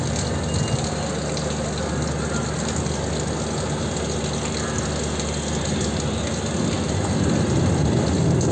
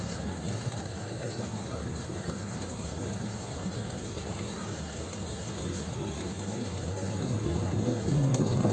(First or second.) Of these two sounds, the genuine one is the first